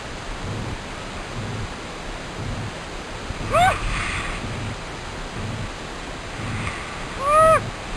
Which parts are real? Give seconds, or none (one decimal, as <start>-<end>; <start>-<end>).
0.0-8.0

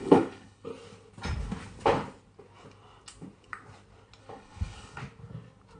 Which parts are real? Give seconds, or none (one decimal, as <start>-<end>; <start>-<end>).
0.7-4.2; 5.0-5.8

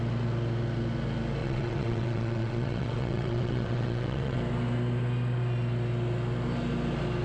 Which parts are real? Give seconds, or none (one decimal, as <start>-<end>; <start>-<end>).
0.0-1.4; 4.4-7.2

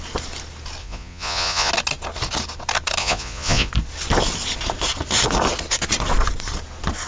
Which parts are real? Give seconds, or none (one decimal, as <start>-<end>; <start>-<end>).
0.0-0.8; 1.7-3.0; 3.7-7.1

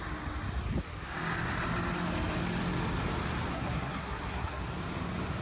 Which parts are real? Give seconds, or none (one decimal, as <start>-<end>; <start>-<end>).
0.0-3.5; 4.6-5.4

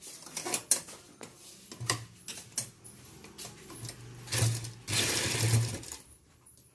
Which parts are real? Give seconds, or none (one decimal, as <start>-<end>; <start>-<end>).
0.0-6.7

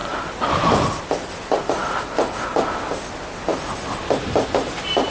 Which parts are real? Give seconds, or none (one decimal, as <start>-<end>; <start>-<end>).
0.0-5.1